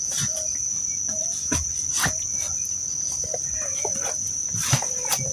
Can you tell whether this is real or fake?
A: real